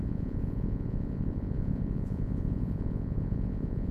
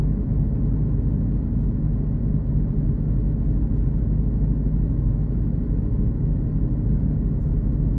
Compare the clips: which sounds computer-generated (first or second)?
first